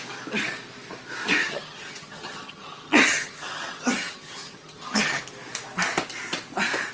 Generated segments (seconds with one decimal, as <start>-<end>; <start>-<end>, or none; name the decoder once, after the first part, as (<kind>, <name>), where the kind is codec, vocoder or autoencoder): 1.4-5.2 (vocoder, HiFi-GAN)